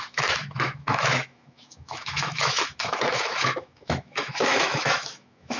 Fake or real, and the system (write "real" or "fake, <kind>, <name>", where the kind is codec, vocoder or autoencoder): fake, autoencoder, DAC-VAE